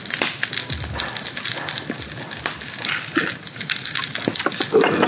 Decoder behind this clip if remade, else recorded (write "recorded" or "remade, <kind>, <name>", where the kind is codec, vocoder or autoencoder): recorded